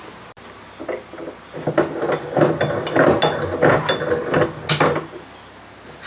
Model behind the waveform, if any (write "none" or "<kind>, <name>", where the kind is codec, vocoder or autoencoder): none